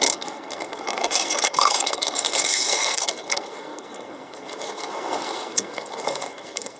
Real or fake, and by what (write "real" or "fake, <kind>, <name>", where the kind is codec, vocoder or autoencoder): fake, codec, SNAC